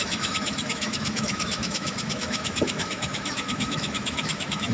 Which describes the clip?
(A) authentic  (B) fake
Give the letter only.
B